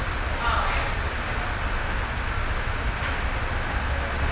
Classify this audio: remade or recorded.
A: recorded